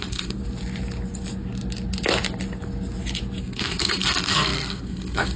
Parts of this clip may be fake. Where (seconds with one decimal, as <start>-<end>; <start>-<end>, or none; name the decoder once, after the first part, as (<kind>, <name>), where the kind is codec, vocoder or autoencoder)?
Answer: 0.0-0.4 (codec, SNAC); 3.4-5.4